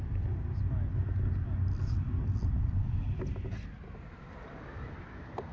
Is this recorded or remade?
recorded